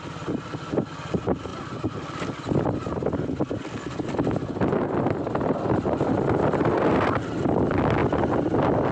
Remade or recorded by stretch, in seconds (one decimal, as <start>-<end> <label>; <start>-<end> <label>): 0.0-8.9 recorded